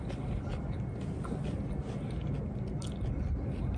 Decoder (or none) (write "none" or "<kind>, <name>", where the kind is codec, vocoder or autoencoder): none